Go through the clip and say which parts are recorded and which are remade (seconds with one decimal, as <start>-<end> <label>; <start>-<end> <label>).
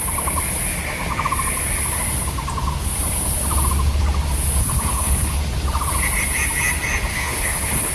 0.0-4.6 recorded; 4.6-5.4 remade; 5.4-7.1 recorded; 7.1-7.9 remade